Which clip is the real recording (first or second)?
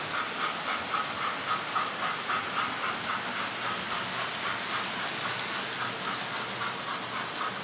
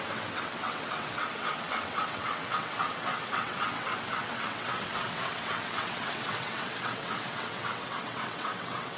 first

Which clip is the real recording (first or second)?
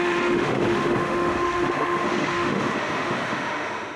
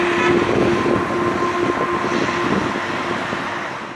second